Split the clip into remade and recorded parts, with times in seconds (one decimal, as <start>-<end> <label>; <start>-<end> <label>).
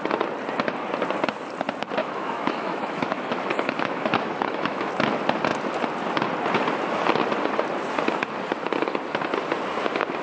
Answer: 0.0-2.0 recorded; 2.0-4.9 remade; 4.9-10.2 recorded